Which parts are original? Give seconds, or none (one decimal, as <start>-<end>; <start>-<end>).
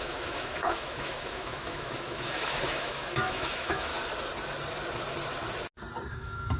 3.9-6.1